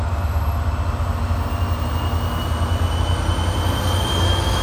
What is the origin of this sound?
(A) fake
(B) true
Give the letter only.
B